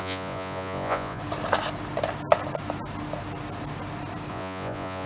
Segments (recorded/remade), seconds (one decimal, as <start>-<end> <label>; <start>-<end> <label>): 0.0-1.2 remade; 1.2-4.3 recorded; 4.3-5.1 remade